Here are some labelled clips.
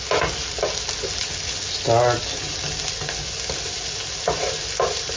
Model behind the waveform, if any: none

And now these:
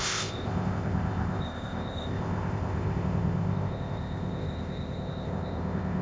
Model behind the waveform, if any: codec, ZipCodec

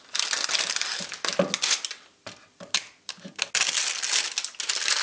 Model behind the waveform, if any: none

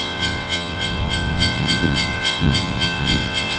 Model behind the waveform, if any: vocoder, WaveNeXt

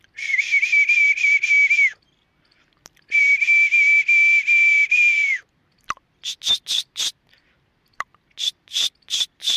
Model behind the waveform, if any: none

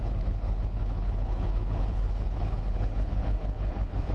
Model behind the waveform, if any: codec, HILCodec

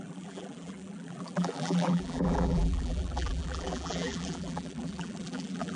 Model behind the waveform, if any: vocoder, BigVGAN v2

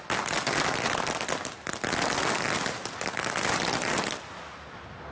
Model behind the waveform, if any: none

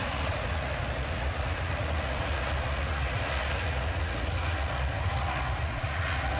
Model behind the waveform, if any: vocoder, Vocos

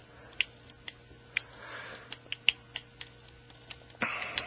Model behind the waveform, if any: none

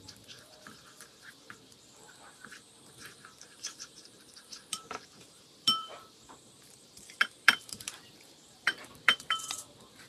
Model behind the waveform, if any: vocoder, BigVGAN v2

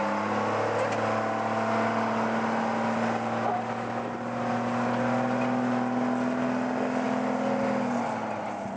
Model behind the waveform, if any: none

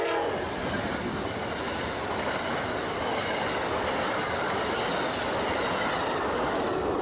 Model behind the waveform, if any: none